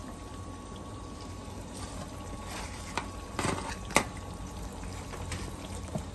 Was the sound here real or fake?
fake